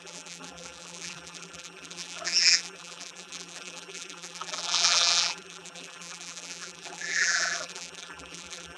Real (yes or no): no